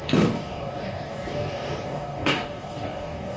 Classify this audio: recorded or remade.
remade